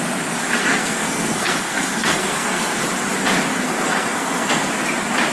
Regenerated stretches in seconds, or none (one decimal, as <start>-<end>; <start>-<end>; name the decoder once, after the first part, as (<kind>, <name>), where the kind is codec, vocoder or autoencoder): 0.6-2.8 (codec, SNAC); 3.5-4.7